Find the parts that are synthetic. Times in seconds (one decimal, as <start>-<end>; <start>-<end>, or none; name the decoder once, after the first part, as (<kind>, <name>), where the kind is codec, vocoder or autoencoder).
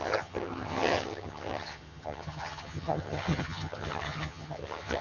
0.0-5.0 (vocoder, HiFi-GAN)